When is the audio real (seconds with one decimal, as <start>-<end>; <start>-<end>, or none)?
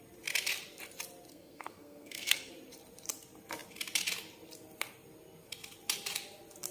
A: 0.0-1.3; 2.5-6.7